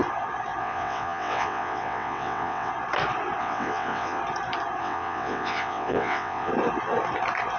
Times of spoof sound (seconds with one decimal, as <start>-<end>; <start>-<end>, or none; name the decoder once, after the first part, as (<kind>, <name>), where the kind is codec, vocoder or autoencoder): 0.6-2.7 (vocoder, WaveNeXt); 3.4-4.2; 4.8-6.5